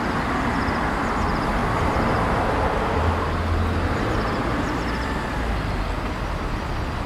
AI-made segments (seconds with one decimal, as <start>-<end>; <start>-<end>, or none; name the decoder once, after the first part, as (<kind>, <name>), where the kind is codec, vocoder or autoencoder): 1.6-5.8 (vocoder, BigVGAN v2)